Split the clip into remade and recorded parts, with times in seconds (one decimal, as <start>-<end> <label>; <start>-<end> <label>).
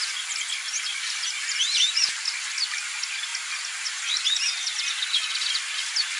0.0-6.2 recorded